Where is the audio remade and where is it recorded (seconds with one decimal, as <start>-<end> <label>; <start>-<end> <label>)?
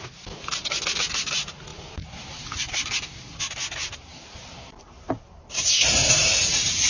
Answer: 0.0-1.7 recorded; 1.7-3.4 remade; 3.4-4.1 recorded; 4.1-5.1 remade; 5.1-6.9 recorded